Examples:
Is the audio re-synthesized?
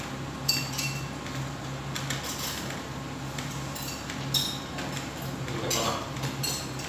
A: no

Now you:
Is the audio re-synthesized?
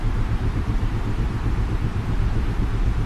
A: yes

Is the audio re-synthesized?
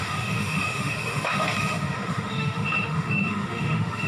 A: yes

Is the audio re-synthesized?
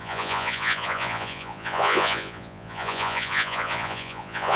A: yes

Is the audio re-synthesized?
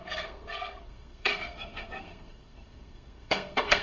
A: yes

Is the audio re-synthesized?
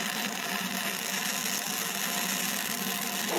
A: no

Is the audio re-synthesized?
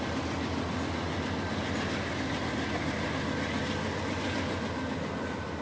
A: no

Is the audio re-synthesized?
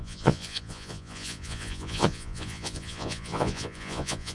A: yes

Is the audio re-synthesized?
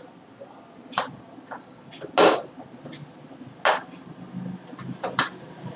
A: no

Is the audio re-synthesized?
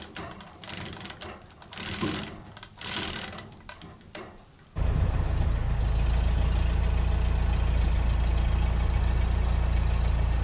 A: no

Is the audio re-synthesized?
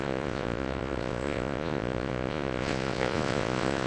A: yes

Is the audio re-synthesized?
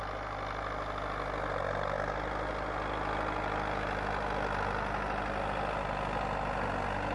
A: no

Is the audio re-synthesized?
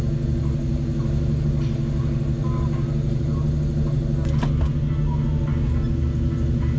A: no